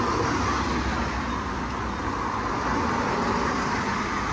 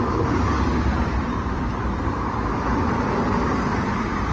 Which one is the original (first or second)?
first